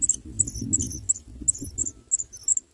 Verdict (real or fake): real